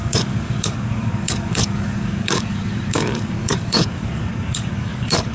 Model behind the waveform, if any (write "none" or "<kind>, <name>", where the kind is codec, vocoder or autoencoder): codec, DAC